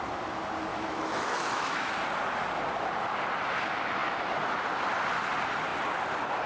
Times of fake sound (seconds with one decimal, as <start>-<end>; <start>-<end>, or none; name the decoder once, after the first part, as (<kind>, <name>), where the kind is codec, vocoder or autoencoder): 0.7-1.9 (autoencoder, DAC-VAE)